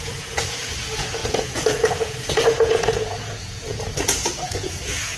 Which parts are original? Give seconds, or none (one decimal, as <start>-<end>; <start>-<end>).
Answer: none